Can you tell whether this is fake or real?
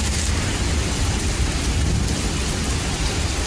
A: real